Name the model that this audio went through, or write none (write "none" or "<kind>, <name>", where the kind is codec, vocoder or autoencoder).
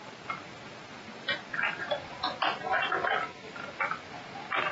none